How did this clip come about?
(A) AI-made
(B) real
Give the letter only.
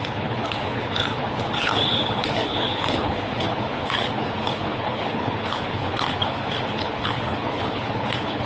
A